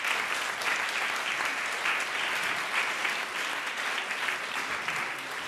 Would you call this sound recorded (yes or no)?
yes